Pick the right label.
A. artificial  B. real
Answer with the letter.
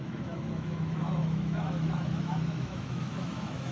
A